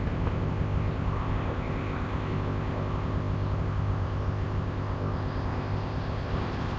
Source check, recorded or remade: remade